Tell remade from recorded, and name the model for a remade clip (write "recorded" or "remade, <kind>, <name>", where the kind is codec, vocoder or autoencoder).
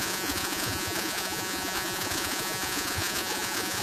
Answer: remade, vocoder, Vocos